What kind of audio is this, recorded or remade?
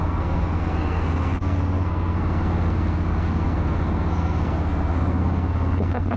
remade